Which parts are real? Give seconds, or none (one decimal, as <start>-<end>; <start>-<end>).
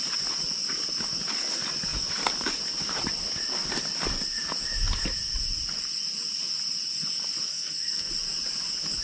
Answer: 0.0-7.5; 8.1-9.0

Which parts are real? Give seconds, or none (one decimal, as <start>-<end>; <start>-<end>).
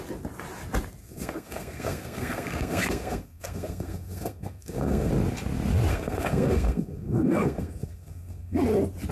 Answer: 0.0-1.0; 5.1-5.9; 8.6-9.1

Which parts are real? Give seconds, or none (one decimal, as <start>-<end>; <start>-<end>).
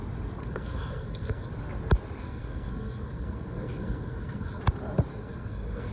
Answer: 0.0-0.4; 1.5-2.2; 4.6-5.1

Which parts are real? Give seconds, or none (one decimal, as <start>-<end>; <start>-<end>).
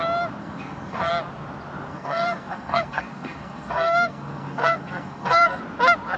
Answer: 0.0-0.4; 1.1-1.9; 5.6-6.2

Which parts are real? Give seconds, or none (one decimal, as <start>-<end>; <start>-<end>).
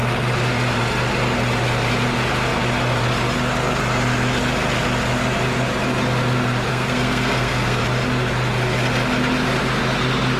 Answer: 0.0-6.7; 7.8-10.4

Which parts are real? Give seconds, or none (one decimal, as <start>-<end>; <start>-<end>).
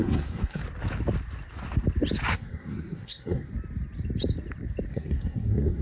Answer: 0.6-2.3; 3.5-4.9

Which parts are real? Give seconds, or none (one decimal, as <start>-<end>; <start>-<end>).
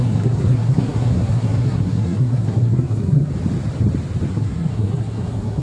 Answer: 3.3-4.3